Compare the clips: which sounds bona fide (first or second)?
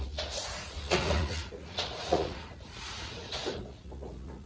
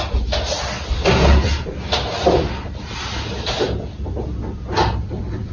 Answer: second